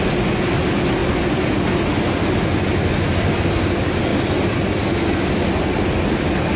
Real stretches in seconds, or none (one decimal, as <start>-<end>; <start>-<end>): 0.0-6.6